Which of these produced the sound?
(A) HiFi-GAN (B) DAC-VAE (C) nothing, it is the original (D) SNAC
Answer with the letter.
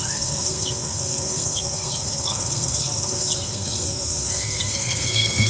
D